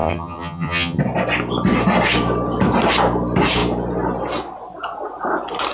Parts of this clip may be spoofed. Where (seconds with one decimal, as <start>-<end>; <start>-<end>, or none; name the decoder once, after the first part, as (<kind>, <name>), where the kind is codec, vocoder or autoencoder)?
0.0-1.0 (vocoder, HiFi-GAN)